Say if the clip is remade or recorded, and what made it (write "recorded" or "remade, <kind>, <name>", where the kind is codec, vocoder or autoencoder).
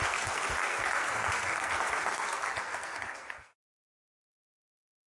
remade, codec, SNAC